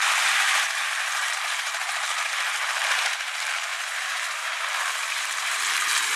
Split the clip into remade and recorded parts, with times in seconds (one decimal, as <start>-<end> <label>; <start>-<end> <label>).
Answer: 0.0-6.2 remade